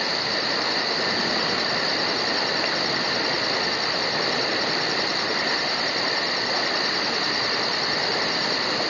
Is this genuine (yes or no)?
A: yes